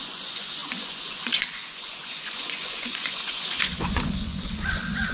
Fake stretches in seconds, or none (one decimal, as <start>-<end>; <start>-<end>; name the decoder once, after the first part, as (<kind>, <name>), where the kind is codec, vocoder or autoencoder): 0.0-5.1 (vocoder, Vocos)